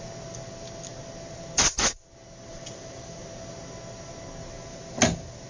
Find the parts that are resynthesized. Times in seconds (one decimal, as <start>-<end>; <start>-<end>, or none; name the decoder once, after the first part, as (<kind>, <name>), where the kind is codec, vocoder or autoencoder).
2.5-3.2 (vocoder, BigVGAN v2)